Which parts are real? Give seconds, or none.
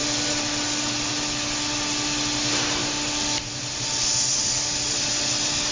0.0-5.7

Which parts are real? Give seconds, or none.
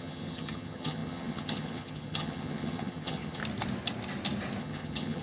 3.4-4.6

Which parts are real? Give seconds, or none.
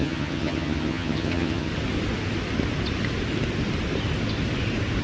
1.7-5.0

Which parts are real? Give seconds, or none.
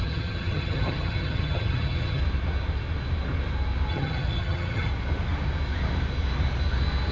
2.2-3.9; 4.9-7.1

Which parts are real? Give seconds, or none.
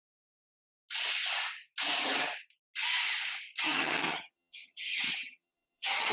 0.0-3.6